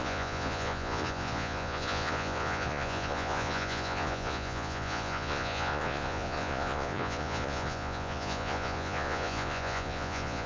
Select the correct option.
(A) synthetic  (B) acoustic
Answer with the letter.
A